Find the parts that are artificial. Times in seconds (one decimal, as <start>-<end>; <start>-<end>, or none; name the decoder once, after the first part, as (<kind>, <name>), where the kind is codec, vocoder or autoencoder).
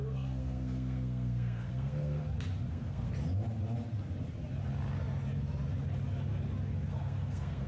0.0-2.2 (codec, SNAC); 2.7-3.1; 6.9-7.7